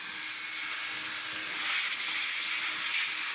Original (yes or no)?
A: yes